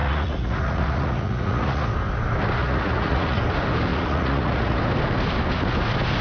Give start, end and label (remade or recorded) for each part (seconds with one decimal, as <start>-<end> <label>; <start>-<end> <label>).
0.0-1.9 remade; 1.9-2.6 recorded; 2.6-3.4 remade; 3.4-3.9 recorded; 3.9-4.8 remade; 4.8-6.2 recorded